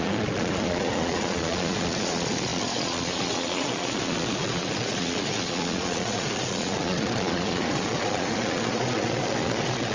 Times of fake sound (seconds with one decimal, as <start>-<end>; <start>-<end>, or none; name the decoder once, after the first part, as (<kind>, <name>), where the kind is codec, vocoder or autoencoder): 0.0-9.9 (vocoder, Vocos)